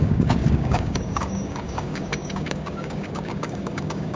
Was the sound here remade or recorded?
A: remade